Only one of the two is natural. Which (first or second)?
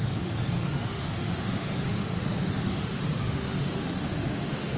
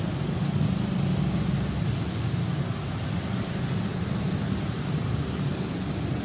second